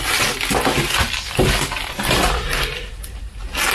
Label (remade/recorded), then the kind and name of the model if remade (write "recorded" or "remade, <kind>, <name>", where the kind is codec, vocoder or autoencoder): recorded